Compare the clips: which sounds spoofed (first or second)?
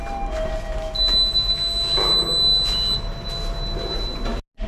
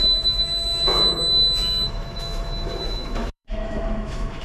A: second